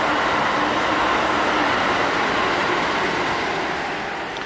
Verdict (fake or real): real